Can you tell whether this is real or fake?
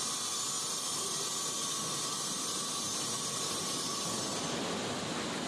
real